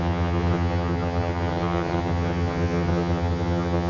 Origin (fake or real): fake